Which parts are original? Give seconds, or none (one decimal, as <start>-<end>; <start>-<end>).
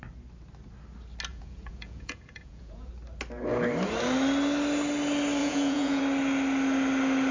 0.0-1.3; 2.9-5.4; 6.0-7.3